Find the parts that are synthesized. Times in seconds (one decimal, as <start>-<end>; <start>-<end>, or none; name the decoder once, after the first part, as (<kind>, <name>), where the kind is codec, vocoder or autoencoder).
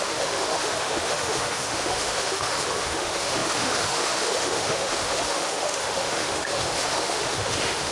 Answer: 0.0-7.9 (autoencoder, DAC-VAE)